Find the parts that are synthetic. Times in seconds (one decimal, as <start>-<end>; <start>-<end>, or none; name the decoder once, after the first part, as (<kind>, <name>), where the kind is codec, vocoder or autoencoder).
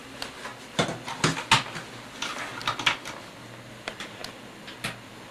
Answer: 0.0-0.5 (vocoder, BigVGAN v2); 3.7-4.2